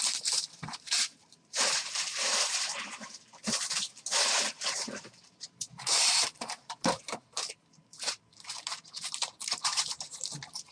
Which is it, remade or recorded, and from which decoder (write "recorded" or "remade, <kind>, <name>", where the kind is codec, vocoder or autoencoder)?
remade, vocoder, BigVGAN v2